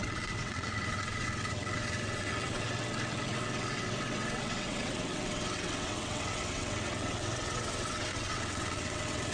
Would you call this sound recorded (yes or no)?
no